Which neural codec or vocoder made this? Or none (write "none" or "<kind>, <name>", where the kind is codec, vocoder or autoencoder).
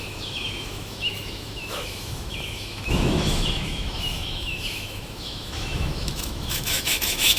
autoencoder, DAC-VAE